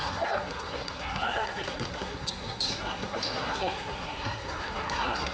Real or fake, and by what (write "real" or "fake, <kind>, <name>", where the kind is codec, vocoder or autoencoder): fake, codec, SNAC